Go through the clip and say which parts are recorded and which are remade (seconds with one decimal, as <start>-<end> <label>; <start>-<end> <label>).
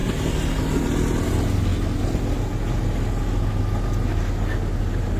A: 0.0-5.2 recorded